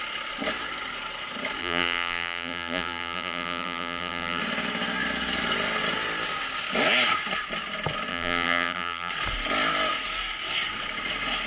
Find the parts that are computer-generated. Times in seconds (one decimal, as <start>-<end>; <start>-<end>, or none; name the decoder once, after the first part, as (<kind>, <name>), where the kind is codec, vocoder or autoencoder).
1.6-4.4 (vocoder, BigVGAN v2); 8.1-9.1